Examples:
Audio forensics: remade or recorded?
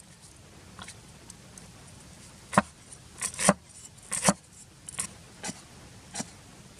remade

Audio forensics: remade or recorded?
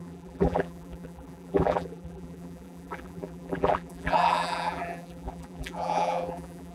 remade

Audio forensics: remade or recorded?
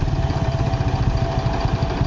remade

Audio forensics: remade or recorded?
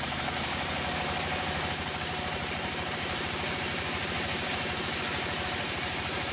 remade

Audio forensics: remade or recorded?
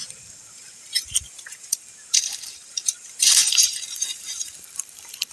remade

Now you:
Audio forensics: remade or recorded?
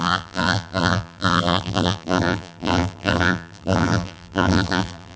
remade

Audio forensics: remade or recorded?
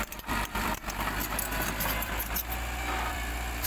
remade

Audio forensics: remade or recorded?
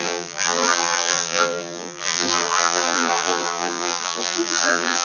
remade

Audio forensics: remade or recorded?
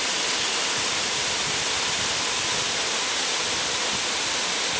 remade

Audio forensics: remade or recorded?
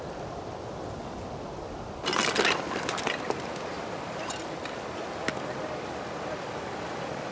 recorded